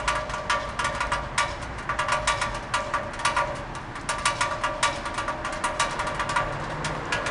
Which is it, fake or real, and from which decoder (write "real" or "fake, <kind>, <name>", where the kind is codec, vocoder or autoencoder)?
real